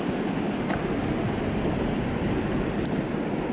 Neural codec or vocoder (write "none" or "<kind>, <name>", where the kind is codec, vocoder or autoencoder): none